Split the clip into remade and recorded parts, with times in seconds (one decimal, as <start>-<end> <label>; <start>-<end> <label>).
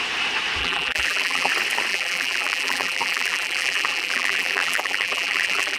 0.0-0.6 recorded; 0.6-1.5 remade; 1.5-1.9 recorded; 1.9-5.8 remade